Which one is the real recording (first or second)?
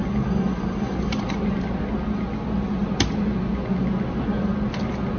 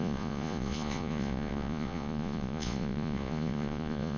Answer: first